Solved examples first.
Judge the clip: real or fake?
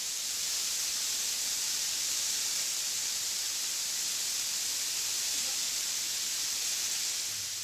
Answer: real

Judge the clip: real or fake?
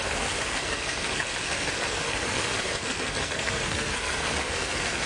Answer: fake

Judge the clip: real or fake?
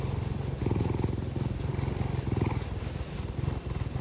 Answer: real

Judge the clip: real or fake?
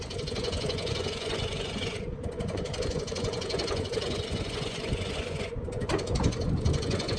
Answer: fake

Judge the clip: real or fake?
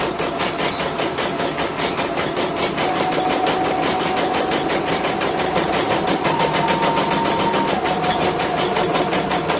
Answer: real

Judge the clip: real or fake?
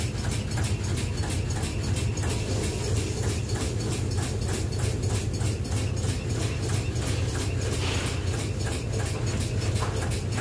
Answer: real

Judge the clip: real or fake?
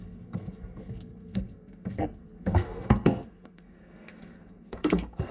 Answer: fake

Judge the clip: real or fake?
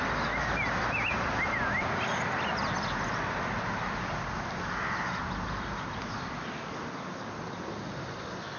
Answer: real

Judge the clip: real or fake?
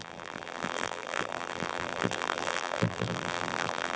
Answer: fake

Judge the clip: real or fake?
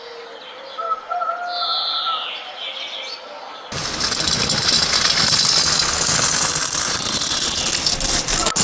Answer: real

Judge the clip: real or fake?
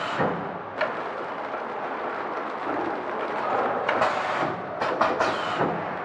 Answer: real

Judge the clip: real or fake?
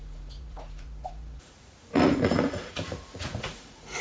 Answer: fake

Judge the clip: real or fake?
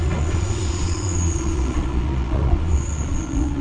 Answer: fake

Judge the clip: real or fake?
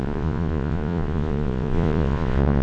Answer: fake